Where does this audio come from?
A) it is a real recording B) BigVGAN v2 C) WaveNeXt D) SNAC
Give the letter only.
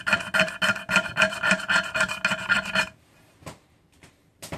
A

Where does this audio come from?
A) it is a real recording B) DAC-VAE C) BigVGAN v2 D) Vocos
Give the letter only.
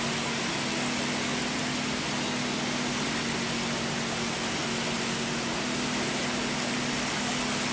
A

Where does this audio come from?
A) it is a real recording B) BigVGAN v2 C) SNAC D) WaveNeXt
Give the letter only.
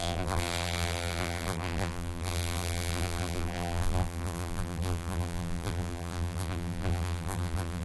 B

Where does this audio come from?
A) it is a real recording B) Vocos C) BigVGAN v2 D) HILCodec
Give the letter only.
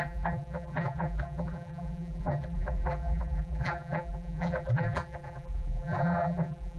C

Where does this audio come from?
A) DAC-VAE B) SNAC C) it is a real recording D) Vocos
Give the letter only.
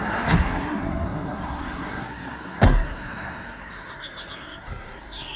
B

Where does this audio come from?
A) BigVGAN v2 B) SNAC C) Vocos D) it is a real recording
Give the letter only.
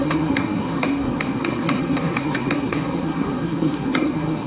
B